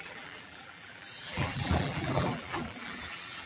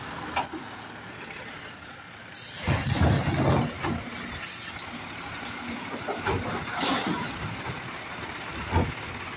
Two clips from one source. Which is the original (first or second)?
second